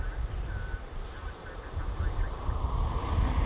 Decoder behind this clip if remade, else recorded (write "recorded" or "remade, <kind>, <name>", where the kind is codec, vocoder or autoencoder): recorded